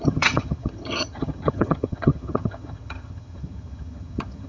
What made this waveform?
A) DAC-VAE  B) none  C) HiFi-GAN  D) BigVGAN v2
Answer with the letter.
C